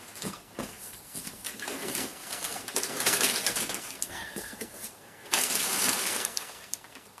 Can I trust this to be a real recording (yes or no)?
no